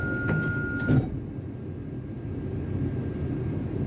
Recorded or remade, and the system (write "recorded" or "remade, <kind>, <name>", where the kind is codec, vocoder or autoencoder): recorded